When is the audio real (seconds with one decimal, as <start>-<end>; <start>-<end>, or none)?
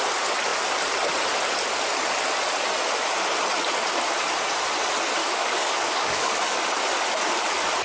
0.0-5.2; 6.4-7.8